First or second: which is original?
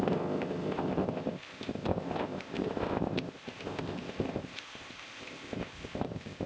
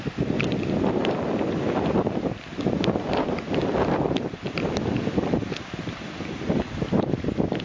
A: second